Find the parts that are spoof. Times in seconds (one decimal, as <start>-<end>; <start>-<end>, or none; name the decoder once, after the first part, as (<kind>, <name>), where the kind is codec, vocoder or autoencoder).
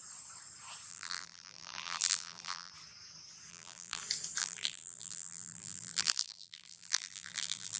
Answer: 0.9-2.7 (vocoder, BigVGAN v2); 3.5-4.0; 4.4-7.8